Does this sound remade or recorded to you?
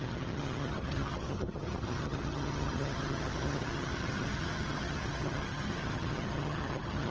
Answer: remade